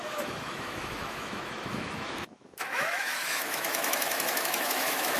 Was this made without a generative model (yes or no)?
no